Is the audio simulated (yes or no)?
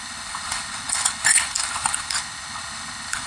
yes